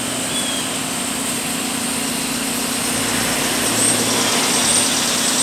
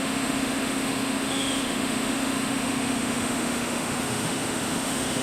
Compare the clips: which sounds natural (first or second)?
first